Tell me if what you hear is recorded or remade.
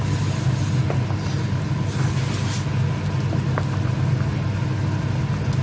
recorded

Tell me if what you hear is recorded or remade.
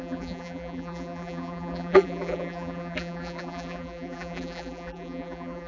remade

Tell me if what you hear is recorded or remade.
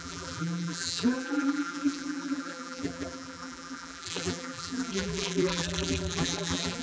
remade